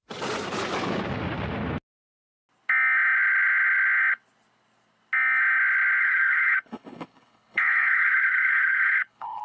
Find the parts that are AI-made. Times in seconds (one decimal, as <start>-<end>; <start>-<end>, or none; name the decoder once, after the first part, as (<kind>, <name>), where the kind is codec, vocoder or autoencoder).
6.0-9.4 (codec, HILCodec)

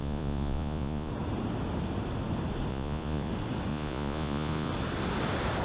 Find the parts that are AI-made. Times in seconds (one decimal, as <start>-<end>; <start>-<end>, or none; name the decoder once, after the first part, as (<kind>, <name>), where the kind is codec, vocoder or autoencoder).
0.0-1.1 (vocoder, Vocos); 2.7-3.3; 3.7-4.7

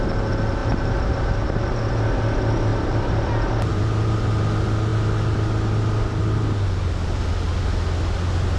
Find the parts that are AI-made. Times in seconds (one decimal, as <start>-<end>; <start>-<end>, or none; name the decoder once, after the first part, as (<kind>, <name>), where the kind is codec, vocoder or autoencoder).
0.6-1.8 (vocoder, BigVGAN v2); 2.7-3.2; 3.7-4.3

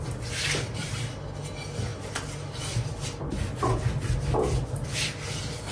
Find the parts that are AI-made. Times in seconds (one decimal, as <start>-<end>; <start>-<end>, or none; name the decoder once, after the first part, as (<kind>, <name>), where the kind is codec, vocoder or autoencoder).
none

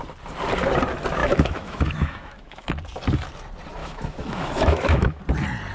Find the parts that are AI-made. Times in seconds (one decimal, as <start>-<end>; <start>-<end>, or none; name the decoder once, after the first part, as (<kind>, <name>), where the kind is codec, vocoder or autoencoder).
1.2-2.7 (autoencoder, DAC-VAE); 3.8-5.2

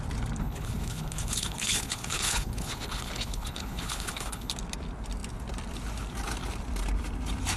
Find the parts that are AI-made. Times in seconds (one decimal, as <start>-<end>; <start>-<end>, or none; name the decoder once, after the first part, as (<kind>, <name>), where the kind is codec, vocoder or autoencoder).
0.4-4.5 (codec, HILCodec)